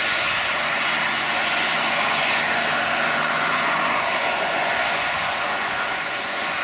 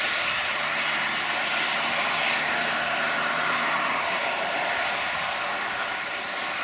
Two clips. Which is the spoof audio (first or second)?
first